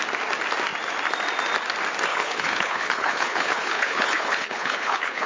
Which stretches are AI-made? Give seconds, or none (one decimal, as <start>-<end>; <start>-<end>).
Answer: 2.1-5.3